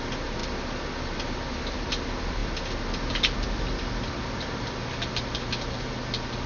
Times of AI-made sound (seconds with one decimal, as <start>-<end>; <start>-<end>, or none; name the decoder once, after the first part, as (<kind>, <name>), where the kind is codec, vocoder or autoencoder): none

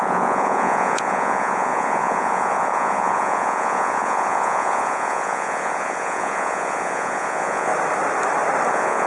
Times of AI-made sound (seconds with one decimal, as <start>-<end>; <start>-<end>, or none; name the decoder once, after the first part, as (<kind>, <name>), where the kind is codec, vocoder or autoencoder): 0.0-7.7 (vocoder, Vocos); 8.7-9.1

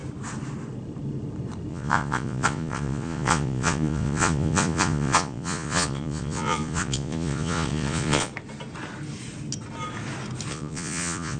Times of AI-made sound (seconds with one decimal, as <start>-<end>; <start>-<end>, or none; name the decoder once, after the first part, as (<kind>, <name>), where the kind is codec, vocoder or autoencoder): 1.7-8.3 (vocoder, Vocos); 10.5-11.4

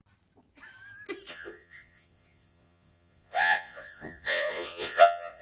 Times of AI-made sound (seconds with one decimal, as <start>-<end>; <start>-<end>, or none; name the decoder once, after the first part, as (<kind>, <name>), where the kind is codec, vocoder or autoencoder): 1.3-5.4 (vocoder, Vocos)